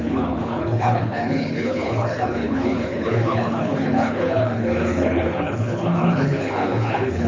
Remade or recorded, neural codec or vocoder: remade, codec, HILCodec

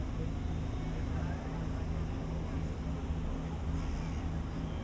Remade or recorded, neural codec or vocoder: recorded